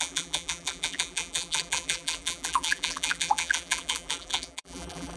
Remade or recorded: remade